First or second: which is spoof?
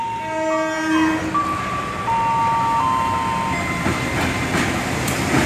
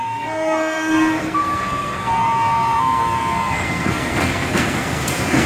second